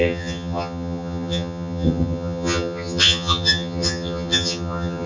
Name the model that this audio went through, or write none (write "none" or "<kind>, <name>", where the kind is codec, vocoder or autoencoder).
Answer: vocoder, HiFi-GAN